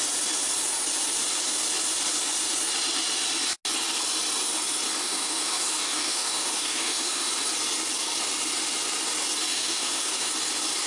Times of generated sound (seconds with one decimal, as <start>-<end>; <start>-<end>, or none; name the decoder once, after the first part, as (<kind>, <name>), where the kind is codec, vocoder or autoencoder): 5.0-7.3 (autoencoder, DAC-VAE); 9.5-10.3